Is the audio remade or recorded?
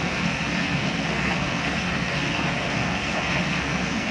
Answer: remade